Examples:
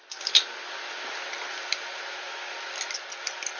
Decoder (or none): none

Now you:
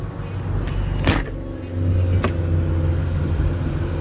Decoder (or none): none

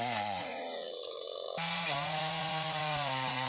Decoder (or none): vocoder, Vocos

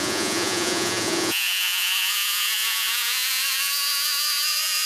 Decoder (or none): vocoder, Vocos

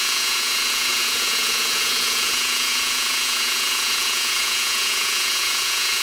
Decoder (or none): vocoder, Vocos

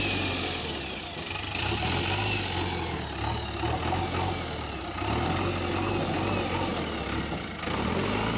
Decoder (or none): none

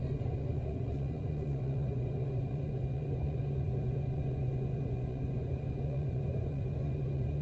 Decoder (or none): vocoder, Vocos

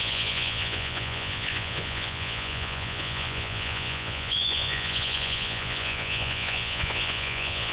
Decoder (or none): vocoder, Vocos